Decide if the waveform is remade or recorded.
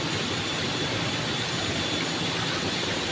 recorded